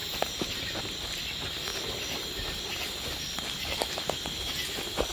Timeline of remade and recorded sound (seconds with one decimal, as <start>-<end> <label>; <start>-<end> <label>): 0.0-5.1 recorded